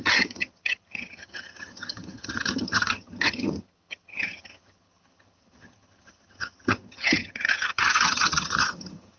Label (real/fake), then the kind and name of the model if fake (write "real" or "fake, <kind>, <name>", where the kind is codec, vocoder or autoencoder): fake, vocoder, HiFi-GAN